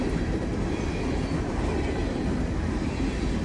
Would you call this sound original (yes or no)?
yes